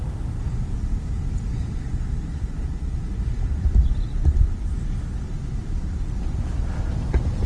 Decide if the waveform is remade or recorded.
recorded